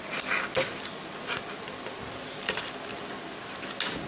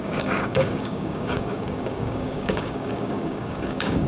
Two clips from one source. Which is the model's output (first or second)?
second